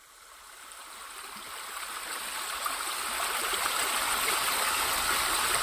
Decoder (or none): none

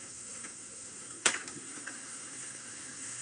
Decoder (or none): codec, SNAC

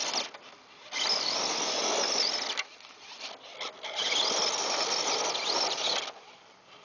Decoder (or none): none